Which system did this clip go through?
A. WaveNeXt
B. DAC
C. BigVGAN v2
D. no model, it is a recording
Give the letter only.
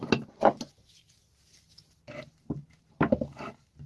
D